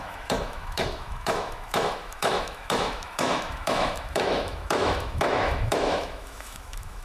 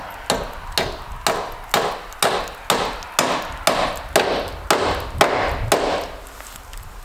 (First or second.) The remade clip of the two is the first